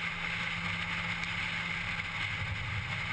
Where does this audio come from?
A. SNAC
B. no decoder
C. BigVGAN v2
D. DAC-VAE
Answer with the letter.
B